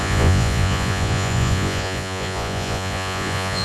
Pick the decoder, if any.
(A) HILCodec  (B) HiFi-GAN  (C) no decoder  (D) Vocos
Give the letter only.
D